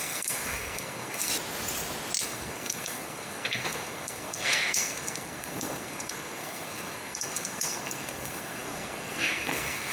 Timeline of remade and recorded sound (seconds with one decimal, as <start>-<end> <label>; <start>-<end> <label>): 0.0-1.3 remade; 1.3-2.2 recorded; 2.2-9.9 remade